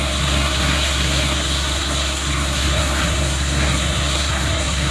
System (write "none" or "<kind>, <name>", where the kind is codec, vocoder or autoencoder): codec, SNAC